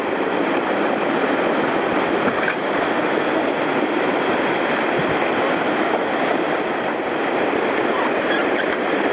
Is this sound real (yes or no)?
no